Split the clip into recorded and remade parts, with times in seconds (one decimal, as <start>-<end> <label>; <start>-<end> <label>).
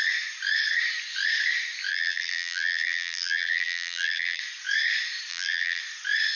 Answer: 0.0-1.9 recorded; 1.9-4.4 remade; 4.4-5.3 recorded; 5.3-5.8 remade; 5.8-6.4 recorded